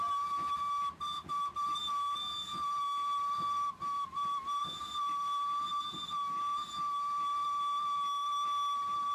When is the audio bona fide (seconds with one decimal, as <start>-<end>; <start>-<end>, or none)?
0.0-9.1